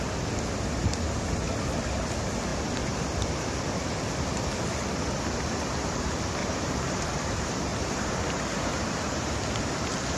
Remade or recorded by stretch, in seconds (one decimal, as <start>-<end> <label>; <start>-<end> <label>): 0.0-6.4 recorded; 6.4-7.1 remade; 7.1-7.7 recorded; 7.7-9.3 remade; 9.3-10.2 recorded